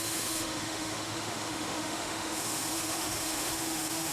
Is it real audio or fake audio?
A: fake